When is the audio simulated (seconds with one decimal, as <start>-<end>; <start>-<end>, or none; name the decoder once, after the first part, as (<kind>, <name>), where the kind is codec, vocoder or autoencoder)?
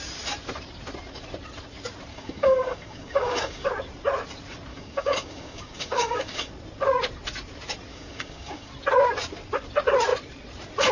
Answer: 2.1-3.7 (codec, DAC); 4.7-6.5; 7.9-8.7